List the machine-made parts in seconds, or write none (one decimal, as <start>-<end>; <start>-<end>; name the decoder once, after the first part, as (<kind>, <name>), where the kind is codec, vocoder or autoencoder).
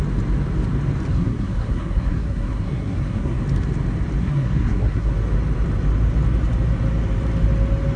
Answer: 1.1-3.4 (codec, SNAC); 4.2-5.1